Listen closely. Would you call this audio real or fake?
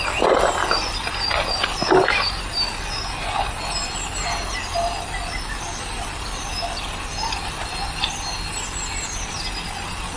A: real